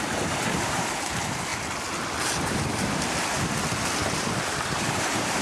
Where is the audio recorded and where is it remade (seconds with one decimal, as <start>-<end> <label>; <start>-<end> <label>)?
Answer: 0.0-1.5 remade; 1.5-4.7 recorded; 4.7-5.4 remade